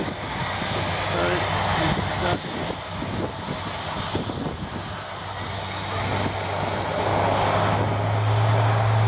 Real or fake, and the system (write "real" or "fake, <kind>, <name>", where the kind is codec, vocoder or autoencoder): real